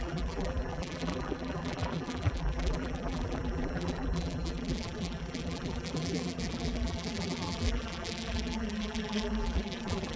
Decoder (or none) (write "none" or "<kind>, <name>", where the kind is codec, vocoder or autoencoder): vocoder, BigVGAN v2